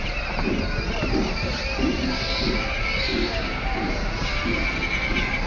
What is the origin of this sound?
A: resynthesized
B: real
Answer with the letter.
B